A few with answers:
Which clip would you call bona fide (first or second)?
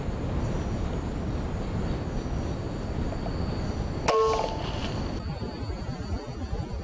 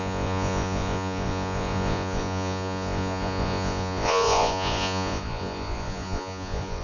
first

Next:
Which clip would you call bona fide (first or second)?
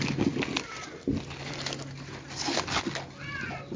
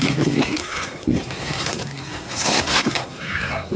first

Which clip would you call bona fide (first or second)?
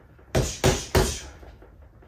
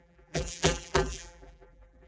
first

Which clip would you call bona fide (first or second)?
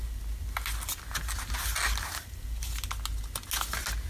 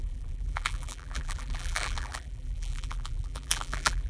first